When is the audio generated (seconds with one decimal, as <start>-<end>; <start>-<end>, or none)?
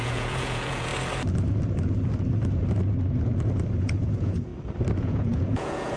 0.0-0.9; 3.8-4.5; 5.0-6.0